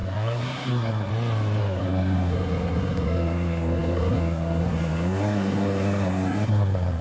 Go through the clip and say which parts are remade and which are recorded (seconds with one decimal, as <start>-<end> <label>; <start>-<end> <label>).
0.0-1.1 remade; 1.1-1.6 recorded; 1.6-7.0 remade